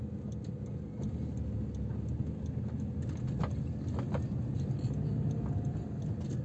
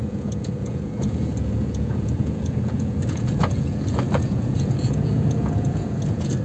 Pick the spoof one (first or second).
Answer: second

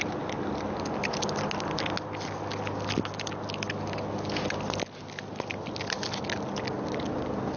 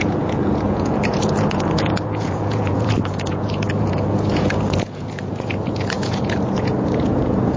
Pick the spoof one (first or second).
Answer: second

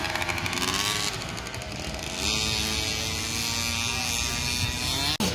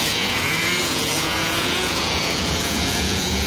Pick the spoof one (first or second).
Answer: second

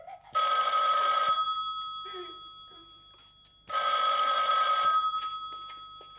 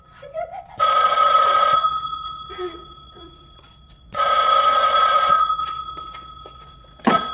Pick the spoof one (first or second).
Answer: second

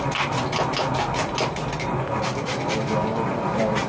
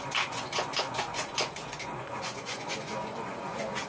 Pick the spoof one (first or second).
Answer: second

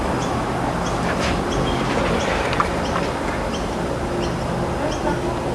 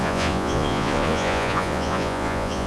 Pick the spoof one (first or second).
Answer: second